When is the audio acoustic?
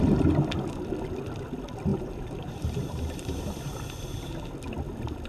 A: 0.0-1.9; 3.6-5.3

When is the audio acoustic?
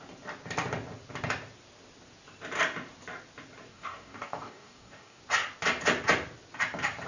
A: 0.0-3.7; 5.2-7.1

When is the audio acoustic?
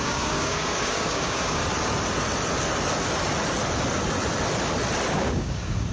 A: 1.6-5.1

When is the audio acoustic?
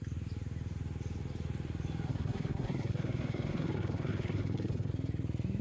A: 0.0-2.1; 4.9-5.6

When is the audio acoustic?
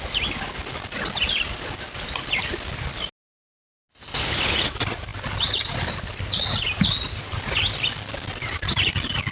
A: 0.0-9.3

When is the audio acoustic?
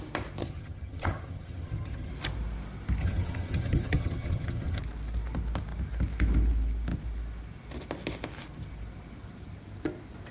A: 0.0-0.4; 2.1-3.0; 4.8-10.3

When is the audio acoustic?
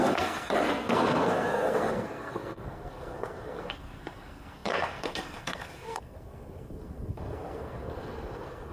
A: none